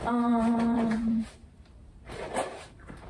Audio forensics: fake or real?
fake